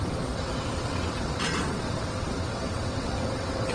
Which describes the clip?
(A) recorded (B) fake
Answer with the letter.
B